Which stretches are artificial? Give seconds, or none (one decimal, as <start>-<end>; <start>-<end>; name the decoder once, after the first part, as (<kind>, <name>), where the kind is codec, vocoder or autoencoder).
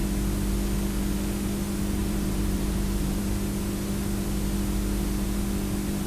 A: 2.0-3.2 (vocoder, BigVGAN v2)